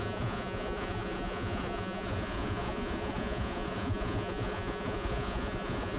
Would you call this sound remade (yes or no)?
yes